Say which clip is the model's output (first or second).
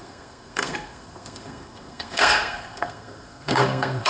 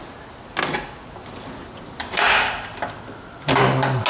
first